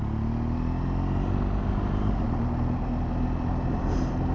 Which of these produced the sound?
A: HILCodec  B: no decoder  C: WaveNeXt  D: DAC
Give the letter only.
B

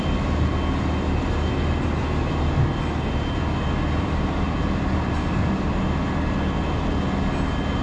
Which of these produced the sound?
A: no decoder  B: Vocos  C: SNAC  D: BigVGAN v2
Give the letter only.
A